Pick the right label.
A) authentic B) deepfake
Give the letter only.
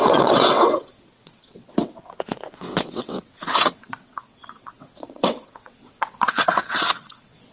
B